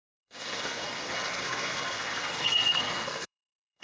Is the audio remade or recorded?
remade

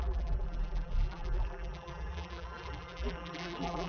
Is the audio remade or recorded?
remade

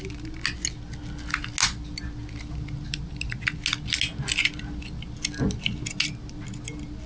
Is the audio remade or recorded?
recorded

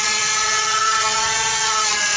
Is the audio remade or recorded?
remade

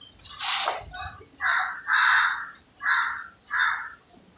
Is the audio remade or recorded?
remade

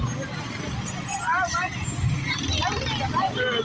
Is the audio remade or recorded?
recorded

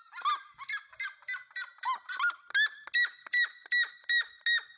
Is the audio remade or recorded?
recorded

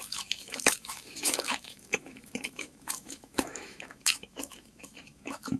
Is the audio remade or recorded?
remade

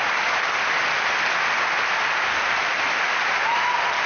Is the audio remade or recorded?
recorded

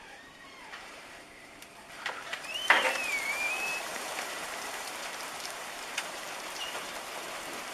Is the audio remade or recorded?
remade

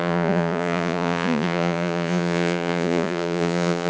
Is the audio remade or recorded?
remade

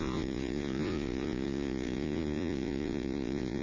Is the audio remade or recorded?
remade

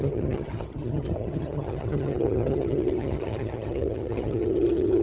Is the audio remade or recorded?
remade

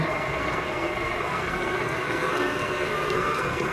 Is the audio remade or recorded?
remade